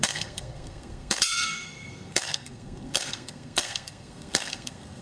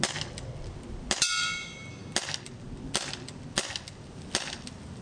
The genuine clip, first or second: second